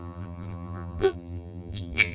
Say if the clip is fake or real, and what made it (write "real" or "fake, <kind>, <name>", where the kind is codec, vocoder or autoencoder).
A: fake, vocoder, BigVGAN v2